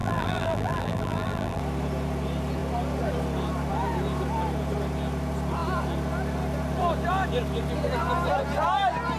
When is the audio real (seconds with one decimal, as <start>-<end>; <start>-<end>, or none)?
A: 1.6-9.2